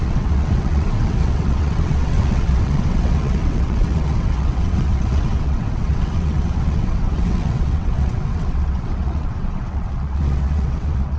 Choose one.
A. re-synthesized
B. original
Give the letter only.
A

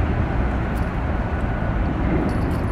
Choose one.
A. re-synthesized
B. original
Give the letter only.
B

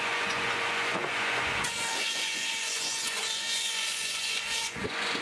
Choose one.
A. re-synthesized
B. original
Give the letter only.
A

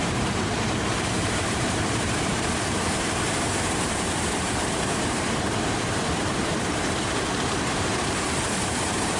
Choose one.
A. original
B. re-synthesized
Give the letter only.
B